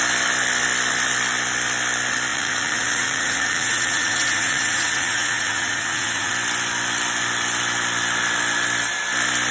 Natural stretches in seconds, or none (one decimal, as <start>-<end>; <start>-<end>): 0.0-2.3; 6.3-9.5